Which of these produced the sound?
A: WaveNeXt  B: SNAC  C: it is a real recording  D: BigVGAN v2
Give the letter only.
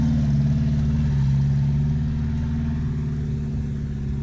C